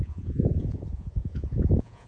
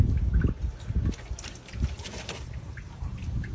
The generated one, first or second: first